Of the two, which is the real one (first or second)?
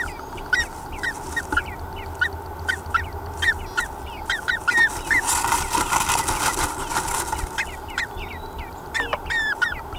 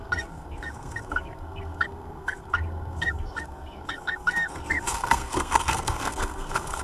first